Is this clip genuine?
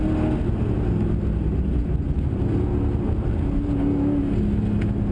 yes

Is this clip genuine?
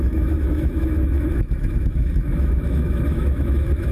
no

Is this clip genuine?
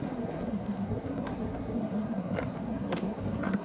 no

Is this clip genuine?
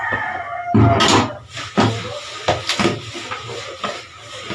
yes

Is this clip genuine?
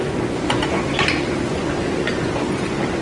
no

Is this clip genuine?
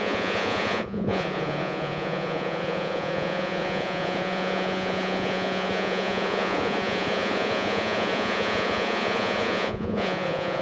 no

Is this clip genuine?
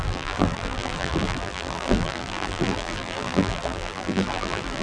no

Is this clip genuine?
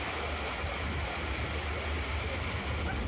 yes